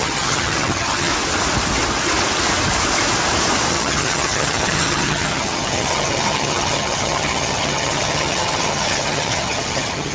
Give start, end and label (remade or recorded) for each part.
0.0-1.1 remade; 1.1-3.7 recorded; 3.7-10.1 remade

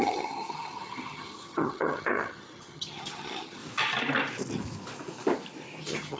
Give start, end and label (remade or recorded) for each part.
0.0-3.6 remade; 3.6-5.8 recorded; 5.8-6.2 remade

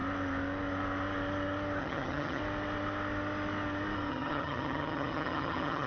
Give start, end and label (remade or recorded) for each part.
0.0-1.8 recorded; 1.8-2.4 remade; 2.4-4.1 recorded; 4.1-5.9 remade

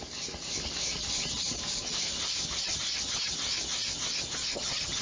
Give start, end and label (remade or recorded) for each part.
0.0-2.6 recorded; 2.6-3.3 remade; 3.3-4.4 recorded; 4.4-5.0 remade

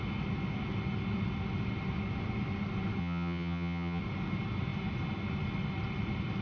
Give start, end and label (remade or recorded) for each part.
0.0-3.0 recorded; 3.0-4.0 remade; 4.0-6.4 recorded

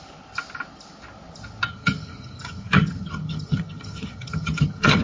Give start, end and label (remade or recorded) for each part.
0.0-1.7 recorded; 1.7-5.0 remade

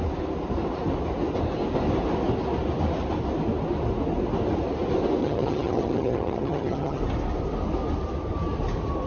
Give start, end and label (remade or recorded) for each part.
0.0-5.2 recorded; 5.2-7.0 remade; 7.0-9.1 recorded